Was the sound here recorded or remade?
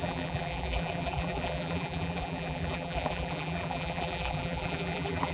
remade